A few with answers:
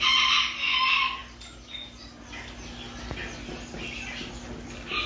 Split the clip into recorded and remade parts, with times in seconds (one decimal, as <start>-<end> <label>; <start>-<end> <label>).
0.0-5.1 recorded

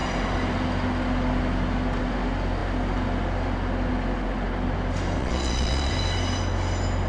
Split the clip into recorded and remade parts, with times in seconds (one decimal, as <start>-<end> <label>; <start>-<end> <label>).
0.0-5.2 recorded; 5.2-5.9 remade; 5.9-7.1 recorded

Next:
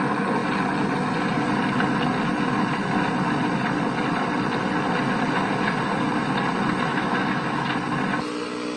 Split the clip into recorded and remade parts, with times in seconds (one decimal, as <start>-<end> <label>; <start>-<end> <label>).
0.0-6.9 recorded; 6.9-7.7 remade; 7.7-8.8 recorded